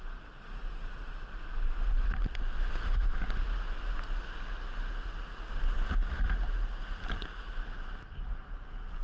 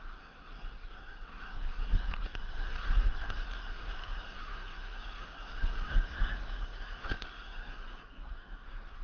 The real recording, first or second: first